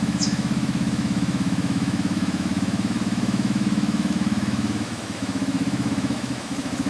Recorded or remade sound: remade